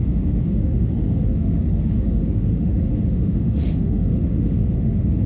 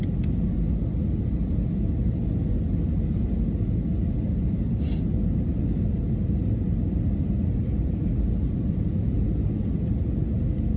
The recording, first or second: second